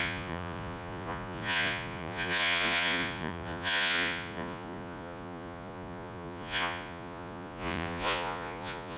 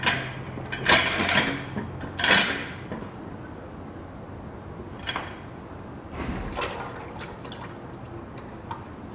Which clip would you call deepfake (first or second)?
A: first